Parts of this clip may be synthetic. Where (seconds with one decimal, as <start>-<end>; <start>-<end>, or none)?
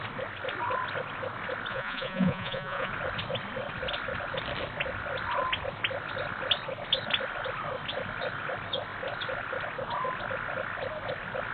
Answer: 1.7-2.9